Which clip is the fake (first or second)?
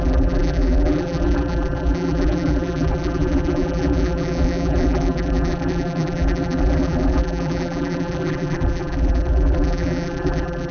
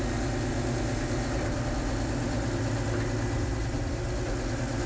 first